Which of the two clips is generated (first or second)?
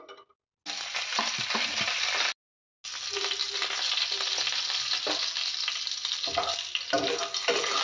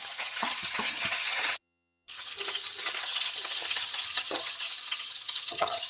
second